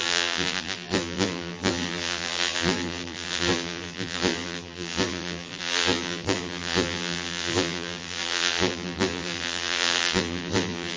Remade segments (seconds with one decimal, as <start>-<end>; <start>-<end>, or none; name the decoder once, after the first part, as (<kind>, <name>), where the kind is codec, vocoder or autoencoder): 0.0-11.0 (vocoder, BigVGAN v2)